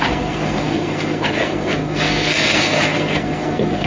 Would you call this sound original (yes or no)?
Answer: no